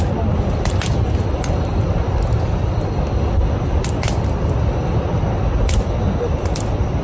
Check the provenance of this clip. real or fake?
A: real